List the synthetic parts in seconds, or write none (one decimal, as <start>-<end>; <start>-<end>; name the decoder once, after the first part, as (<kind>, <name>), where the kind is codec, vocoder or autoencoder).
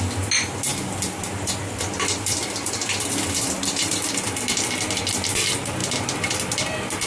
0.7-5.0 (vocoder, BigVGAN v2)